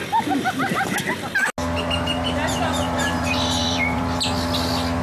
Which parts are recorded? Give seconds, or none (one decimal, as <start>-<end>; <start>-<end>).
0.0-2.4; 4.0-5.0